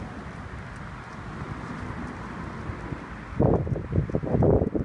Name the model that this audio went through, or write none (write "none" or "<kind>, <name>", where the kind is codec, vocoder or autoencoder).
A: none